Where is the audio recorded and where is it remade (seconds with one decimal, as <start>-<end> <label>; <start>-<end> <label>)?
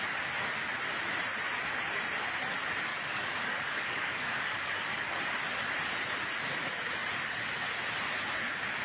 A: 0.0-2.9 recorded; 2.9-5.2 remade; 5.2-8.8 recorded